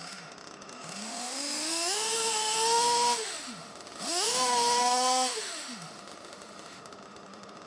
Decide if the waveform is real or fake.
fake